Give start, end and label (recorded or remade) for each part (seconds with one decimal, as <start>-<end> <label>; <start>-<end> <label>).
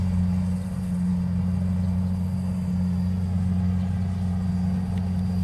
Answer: 0.0-5.4 recorded